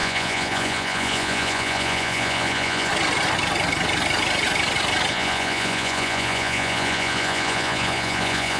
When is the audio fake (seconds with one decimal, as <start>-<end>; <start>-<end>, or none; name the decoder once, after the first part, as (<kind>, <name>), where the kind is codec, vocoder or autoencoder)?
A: 0.0-2.9 (vocoder, Vocos); 5.1-8.6